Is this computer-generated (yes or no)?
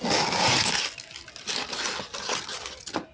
no